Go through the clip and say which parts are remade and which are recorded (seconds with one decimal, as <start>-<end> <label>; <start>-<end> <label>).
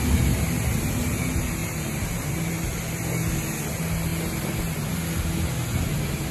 0.0-1.6 recorded; 1.6-2.5 remade; 2.5-6.3 recorded